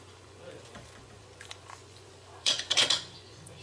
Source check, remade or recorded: remade